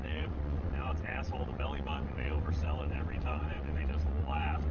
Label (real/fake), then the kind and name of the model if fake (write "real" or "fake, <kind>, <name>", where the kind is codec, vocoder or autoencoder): fake, vocoder, WaveNeXt